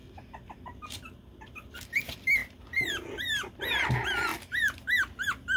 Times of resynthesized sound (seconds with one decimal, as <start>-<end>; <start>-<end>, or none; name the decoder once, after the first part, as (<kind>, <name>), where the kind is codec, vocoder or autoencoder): 2.4-2.9 (vocoder, BigVGAN v2)

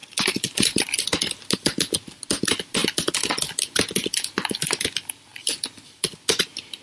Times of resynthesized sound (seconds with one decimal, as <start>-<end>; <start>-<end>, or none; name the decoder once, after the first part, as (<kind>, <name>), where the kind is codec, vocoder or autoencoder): 0.0-0.8 (vocoder, BigVGAN v2)

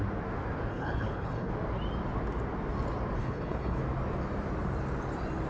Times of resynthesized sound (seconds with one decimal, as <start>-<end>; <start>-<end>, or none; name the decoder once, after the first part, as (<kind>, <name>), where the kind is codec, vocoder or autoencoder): 0.7-1.5 (codec, HILCodec); 3.2-3.8

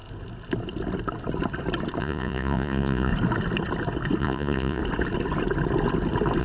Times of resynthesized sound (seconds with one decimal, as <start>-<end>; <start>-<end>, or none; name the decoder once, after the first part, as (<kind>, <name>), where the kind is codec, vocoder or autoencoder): 2.0-3.1 (vocoder, Vocos); 4.2-4.8

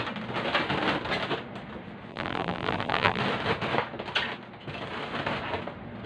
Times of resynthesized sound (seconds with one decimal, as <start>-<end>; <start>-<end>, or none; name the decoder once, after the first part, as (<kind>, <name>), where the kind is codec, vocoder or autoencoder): 2.1-3.2 (vocoder, BigVGAN v2)

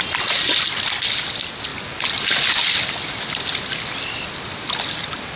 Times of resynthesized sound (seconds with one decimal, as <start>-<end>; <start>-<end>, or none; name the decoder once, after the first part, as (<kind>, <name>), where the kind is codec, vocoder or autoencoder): none